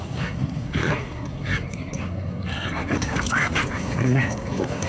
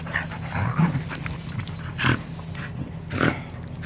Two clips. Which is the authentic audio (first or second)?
second